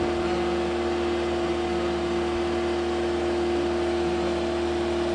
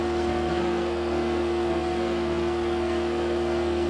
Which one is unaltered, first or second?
first